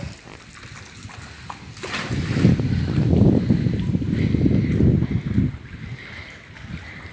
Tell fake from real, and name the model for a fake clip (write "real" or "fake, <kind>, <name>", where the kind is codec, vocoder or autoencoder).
real